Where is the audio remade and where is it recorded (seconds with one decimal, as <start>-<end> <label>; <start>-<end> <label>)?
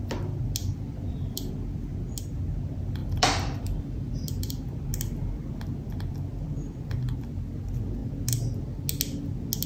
0.0-0.6 recorded; 0.6-1.5 remade; 1.5-3.0 recorded; 3.0-4.5 remade; 4.5-9.7 recorded